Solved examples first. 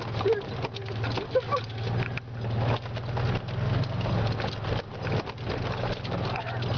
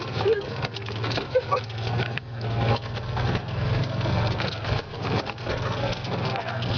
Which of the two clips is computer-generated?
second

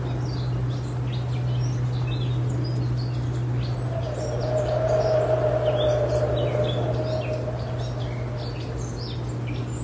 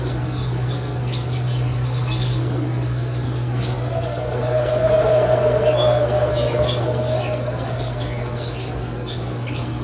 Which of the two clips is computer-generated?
second